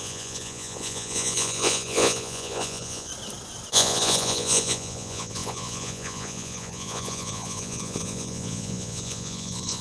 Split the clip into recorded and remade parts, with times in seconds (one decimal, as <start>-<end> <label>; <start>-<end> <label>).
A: 0.0-3.1 remade; 3.1-3.7 recorded; 3.7-9.8 remade